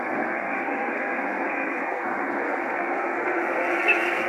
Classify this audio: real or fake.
fake